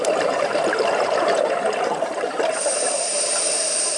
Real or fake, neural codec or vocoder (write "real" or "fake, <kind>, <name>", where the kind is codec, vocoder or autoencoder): fake, vocoder, BigVGAN v2